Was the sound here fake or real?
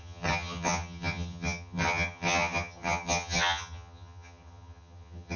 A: fake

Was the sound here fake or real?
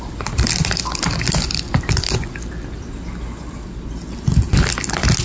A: real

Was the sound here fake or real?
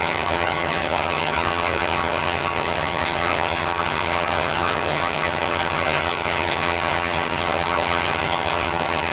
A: fake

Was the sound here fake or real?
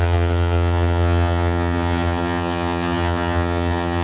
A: fake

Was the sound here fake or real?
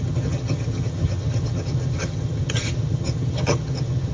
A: fake